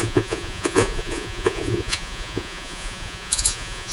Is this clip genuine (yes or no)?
no